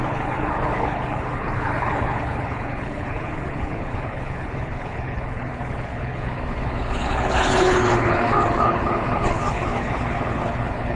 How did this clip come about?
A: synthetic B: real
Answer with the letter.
A